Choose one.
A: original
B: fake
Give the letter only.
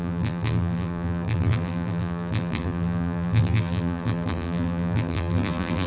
B